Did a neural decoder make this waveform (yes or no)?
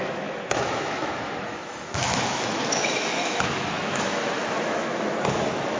yes